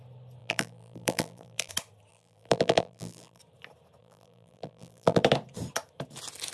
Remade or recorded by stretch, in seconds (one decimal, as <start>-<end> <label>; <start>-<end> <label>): 0.0-0.4 recorded; 0.4-1.7 remade; 1.7-2.1 recorded; 2.1-3.4 remade; 3.4-4.0 recorded; 4.0-5.2 remade; 5.2-6.5 recorded

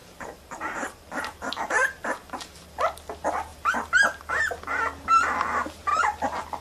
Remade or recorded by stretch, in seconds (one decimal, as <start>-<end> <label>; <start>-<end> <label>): 0.0-2.8 remade; 2.8-3.5 recorded; 3.5-4.5 remade; 4.5-5.9 recorded; 5.9-6.6 remade

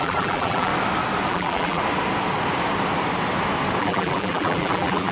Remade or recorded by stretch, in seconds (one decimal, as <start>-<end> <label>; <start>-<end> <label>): 0.0-0.7 remade; 0.7-1.3 recorded; 1.3-1.8 remade; 1.8-3.8 recorded; 3.8-5.1 remade